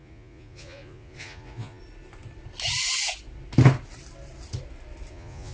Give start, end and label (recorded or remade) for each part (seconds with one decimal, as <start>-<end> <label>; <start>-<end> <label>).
0.0-1.8 remade; 1.8-5.1 recorded; 5.1-5.5 remade